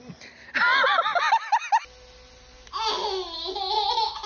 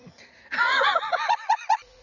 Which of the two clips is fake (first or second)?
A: second